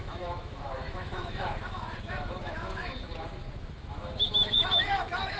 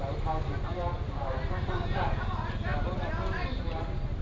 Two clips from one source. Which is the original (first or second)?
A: second